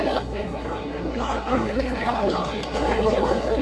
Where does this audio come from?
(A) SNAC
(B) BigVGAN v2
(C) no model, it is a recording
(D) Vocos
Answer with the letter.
A